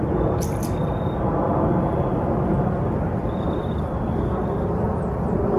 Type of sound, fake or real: real